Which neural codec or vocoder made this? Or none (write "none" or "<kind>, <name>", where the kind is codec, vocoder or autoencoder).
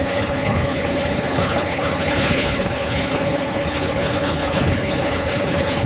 codec, HILCodec